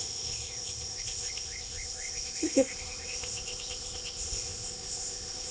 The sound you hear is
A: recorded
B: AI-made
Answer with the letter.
B